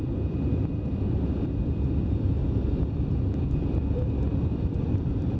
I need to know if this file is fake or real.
fake